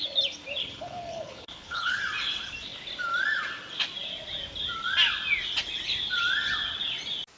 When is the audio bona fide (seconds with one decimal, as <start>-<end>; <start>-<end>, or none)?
0.0-0.6; 2.0-7.4